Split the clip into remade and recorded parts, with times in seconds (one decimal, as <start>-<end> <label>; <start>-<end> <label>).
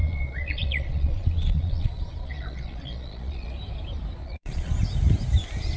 0.0-3.5 remade; 3.5-4.2 recorded; 4.2-4.7 remade; 4.7-5.8 recorded